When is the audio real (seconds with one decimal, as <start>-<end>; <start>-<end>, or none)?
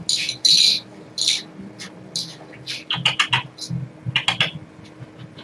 0.0-5.4